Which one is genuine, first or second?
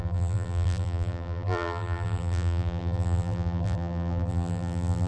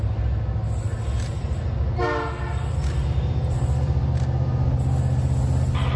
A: second